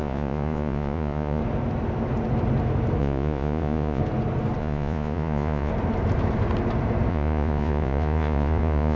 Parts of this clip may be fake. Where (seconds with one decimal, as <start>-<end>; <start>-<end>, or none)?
0.0-1.4; 3.0-4.0; 4.6-5.7; 7.1-9.0

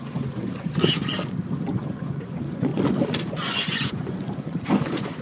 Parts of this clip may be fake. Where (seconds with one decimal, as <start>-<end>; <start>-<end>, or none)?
0.0-0.7; 1.8-2.7; 3.3-5.2

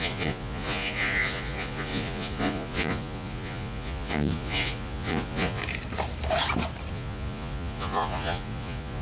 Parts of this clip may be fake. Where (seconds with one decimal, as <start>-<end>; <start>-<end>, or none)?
0.0-5.6; 6.9-9.0

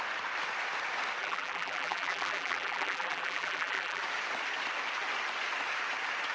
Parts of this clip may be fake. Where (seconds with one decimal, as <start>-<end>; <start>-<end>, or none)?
1.2-4.0

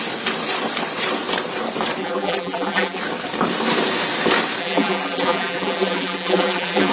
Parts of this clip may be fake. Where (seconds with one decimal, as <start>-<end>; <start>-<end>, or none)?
2.0-3.0; 4.6-6.9

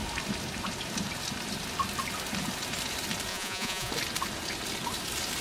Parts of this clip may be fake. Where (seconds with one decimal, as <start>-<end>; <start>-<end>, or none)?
3.3-3.9

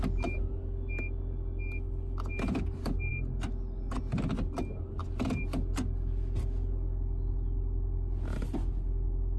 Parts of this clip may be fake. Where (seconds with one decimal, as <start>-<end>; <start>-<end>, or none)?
none